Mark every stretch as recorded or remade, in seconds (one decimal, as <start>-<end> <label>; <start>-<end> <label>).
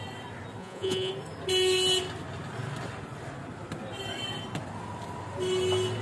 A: 0.0-0.6 recorded; 0.6-1.1 remade; 1.1-6.0 recorded